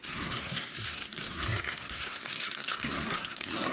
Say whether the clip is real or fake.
fake